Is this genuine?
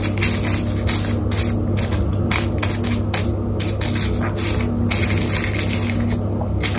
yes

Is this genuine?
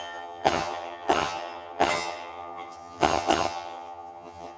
no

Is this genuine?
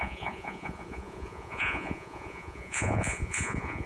no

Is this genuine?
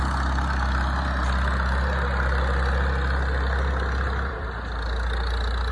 yes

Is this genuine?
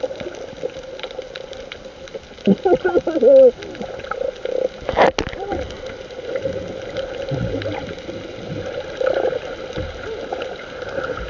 yes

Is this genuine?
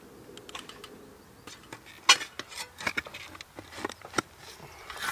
yes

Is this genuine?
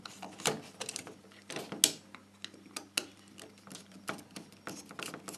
yes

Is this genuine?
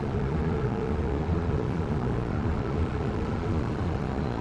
no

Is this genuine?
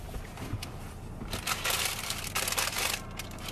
no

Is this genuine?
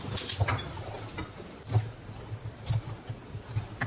yes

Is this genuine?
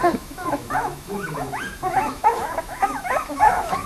no